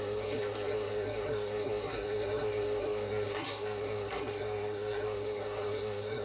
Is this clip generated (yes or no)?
yes